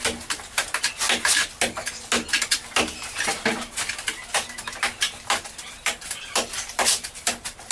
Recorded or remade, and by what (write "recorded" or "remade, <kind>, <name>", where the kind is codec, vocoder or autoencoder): recorded